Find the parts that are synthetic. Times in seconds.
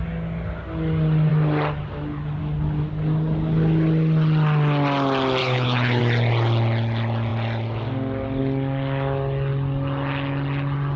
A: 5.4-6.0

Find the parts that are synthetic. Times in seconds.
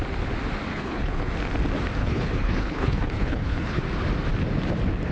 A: 0.7-1.3; 2.0-3.8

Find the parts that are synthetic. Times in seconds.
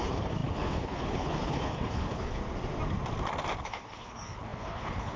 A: 0.0-2.4; 3.6-5.2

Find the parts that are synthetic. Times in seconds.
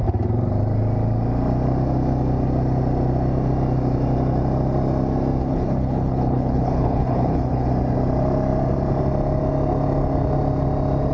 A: 5.4-7.7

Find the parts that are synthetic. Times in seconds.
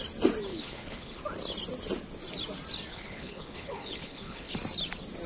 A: 0.5-1.2; 2.9-4.5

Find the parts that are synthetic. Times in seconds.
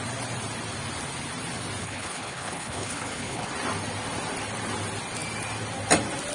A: 1.8-3.5